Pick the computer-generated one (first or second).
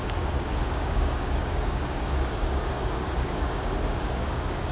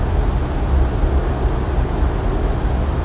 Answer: first